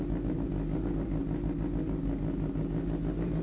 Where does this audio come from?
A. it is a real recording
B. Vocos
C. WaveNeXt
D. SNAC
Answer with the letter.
A